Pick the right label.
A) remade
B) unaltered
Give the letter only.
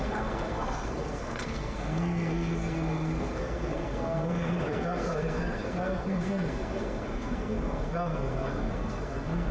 A